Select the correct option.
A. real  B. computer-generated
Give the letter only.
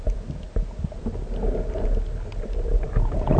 A